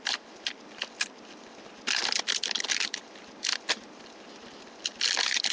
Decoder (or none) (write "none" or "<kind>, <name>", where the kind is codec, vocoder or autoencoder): none